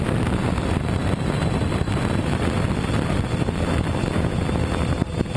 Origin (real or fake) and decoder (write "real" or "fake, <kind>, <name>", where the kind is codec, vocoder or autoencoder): real